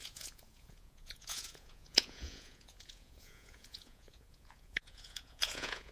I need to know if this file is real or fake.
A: fake